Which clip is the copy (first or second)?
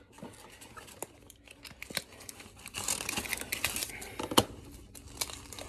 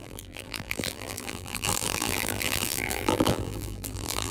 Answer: second